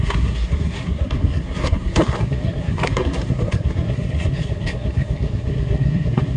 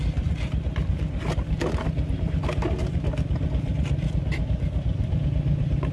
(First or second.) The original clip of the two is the second